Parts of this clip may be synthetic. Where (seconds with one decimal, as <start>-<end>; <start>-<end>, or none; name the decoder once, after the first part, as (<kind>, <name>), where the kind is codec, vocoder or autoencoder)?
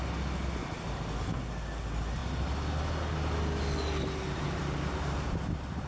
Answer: none